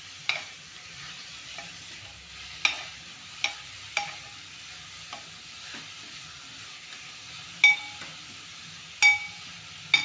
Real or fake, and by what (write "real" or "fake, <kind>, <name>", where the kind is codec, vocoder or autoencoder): real